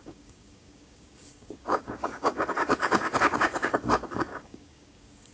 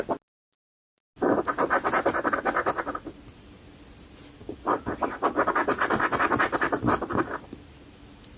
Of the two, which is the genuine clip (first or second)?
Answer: second